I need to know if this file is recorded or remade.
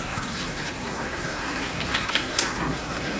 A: remade